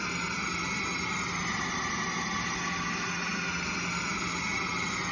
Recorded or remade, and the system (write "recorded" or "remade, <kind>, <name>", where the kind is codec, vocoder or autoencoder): recorded